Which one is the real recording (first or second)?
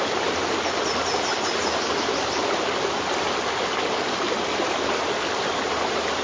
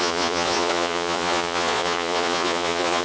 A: first